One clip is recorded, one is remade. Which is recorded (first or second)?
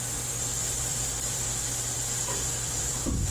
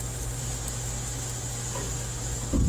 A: second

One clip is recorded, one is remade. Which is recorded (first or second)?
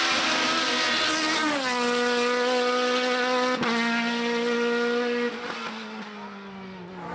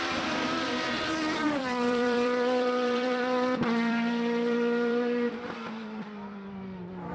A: first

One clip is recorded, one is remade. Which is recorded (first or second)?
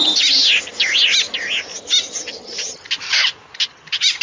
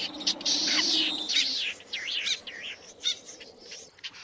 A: first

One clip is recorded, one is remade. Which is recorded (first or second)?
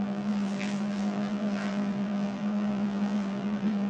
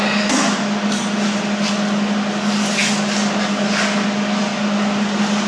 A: second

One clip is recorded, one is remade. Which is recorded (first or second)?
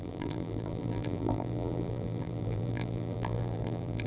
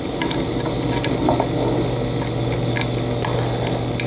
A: second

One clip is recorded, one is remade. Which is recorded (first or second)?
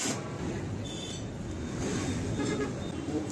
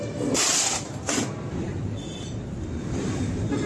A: first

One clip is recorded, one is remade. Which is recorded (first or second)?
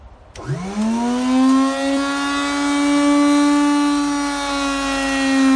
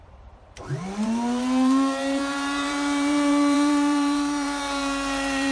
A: first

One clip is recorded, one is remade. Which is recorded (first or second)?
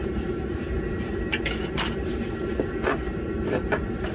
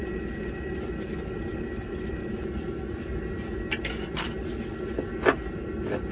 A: second